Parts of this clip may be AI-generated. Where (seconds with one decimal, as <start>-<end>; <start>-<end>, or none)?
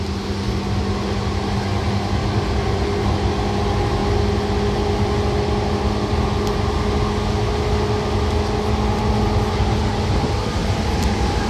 2.2-2.8; 10.6-11.5